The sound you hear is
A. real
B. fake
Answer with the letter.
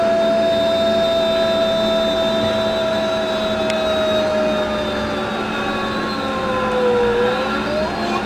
A